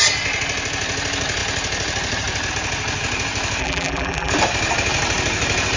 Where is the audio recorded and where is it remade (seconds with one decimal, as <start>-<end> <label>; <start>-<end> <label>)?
0.0-3.6 recorded; 3.6-4.3 remade; 4.3-5.8 recorded